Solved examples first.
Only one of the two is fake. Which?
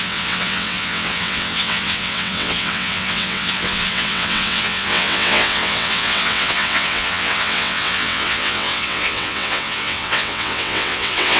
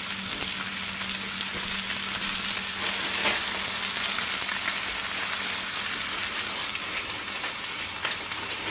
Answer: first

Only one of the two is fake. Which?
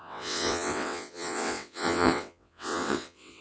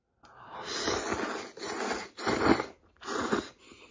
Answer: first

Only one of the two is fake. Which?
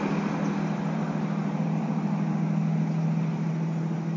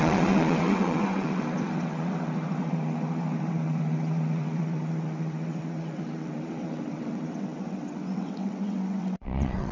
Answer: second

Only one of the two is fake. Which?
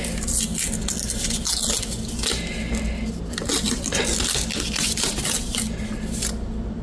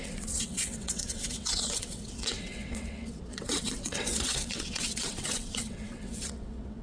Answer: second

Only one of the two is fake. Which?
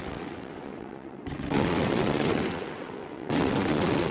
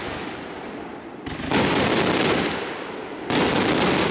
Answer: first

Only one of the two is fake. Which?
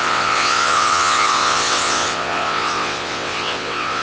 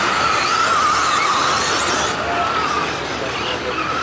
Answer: first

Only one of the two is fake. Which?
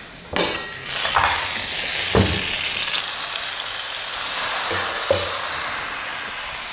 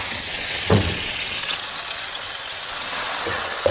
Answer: second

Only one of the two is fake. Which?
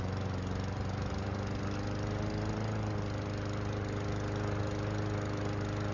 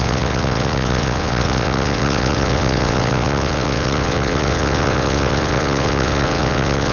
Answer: second